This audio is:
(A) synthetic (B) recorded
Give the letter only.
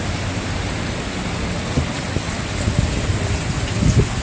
B